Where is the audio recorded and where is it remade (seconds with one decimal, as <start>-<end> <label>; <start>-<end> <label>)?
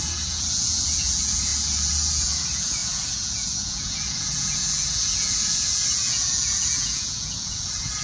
0.0-8.0 remade